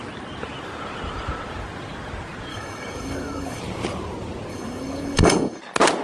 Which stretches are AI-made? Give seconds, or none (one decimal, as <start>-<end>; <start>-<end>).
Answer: 2.5-3.6; 4.5-5.6